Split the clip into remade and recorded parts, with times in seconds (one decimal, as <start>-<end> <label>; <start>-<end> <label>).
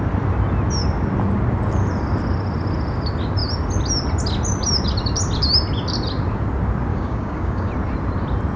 0.0-6.9 recorded; 6.9-7.7 remade; 7.7-8.6 recorded